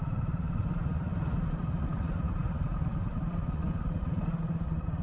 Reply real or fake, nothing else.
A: real